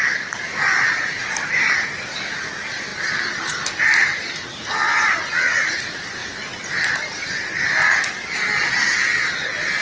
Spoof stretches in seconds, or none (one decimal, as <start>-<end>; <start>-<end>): none